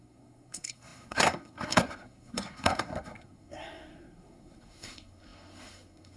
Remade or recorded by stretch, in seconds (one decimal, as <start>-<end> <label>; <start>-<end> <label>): 0.0-6.2 remade